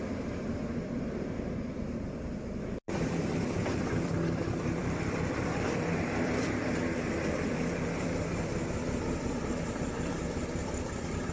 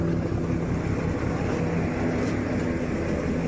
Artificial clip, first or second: first